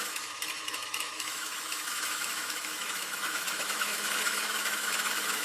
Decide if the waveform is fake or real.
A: fake